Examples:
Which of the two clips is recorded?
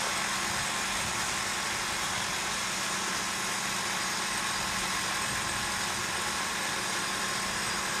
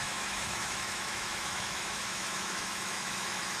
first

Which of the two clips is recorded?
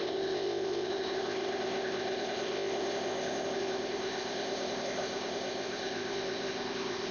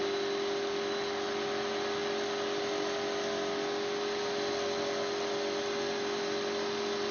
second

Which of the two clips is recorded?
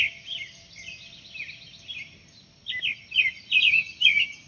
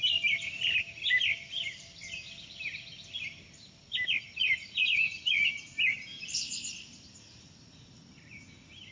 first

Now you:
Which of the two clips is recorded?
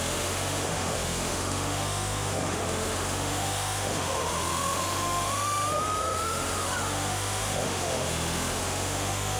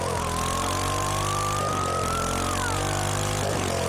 second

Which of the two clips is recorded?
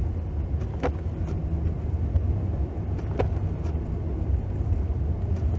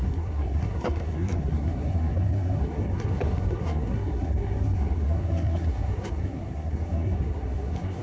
first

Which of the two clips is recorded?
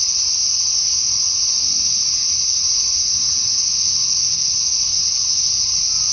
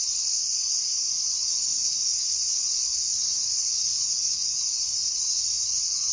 first